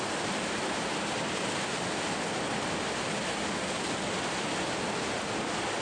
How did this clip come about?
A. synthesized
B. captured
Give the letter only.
B